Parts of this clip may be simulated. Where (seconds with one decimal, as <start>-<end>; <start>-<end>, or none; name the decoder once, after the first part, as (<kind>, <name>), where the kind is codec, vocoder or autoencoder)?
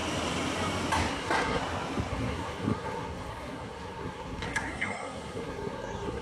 1.1-1.6 (codec, SNAC); 2.1-6.2